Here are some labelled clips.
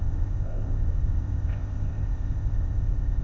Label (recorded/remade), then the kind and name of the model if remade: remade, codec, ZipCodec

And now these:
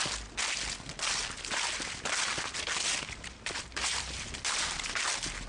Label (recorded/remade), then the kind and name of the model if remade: recorded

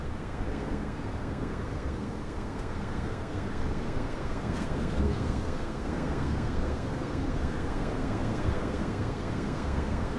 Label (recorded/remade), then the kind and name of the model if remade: remade, codec, SNAC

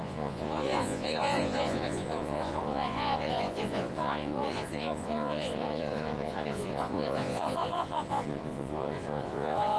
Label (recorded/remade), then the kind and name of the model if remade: remade, vocoder, Vocos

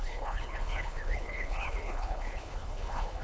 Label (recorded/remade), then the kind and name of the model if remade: remade, codec, HILCodec